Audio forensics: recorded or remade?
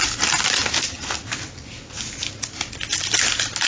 recorded